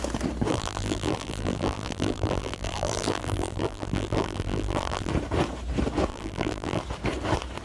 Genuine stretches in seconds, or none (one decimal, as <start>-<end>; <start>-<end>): 0.0-0.5; 5.1-6.1; 6.8-7.6